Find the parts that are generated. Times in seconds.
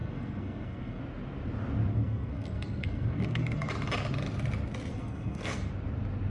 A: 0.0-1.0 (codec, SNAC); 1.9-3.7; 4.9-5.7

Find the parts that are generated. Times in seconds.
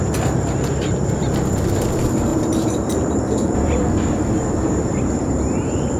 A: 2.3-6.0 (vocoder, BigVGAN v2)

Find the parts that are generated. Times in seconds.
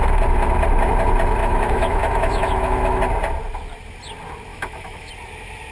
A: 1.4-3.0 (autoencoder, DAC-VAE); 4.5-5.1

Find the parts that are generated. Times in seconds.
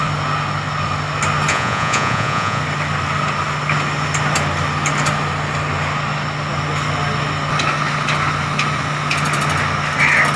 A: 1.5-2.6 (vocoder, Vocos)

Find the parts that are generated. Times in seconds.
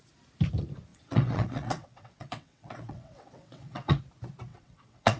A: 0.9-4.0 (vocoder, WaveNeXt); 4.5-5.2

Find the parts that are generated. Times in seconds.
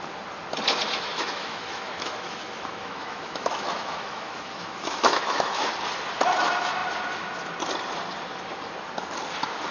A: 1.1-5.7 (autoencoder, DAC-VAE)